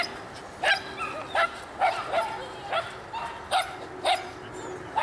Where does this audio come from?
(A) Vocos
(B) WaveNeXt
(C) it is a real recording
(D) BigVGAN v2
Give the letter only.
C